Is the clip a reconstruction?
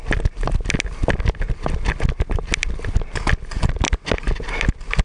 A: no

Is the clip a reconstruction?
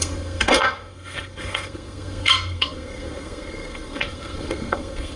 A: yes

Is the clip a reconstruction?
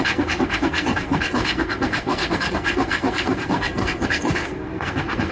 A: yes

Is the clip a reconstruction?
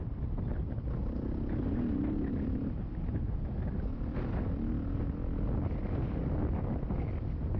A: no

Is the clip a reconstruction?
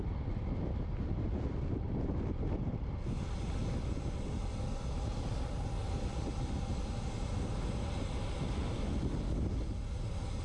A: no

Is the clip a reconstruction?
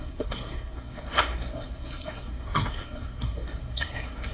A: yes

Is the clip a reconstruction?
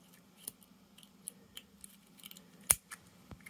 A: no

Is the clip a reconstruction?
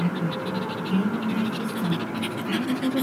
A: no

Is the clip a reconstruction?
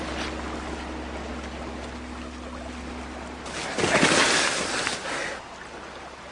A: no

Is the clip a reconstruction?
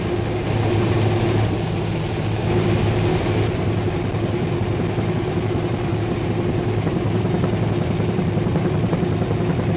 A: no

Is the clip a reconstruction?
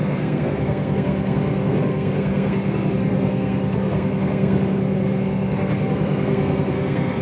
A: yes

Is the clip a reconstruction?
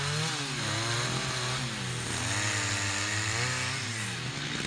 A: no